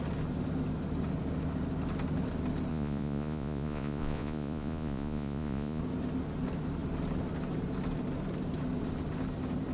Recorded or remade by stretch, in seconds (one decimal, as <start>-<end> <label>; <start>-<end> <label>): 0.0-2.7 recorded; 2.7-5.8 remade; 5.8-9.7 recorded